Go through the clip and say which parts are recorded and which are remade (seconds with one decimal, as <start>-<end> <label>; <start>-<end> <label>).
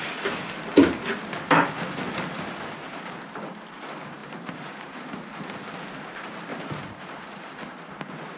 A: 0.0-4.2 recorded; 4.2-5.5 remade; 5.5-6.5 recorded; 6.5-7.5 remade; 7.5-8.4 recorded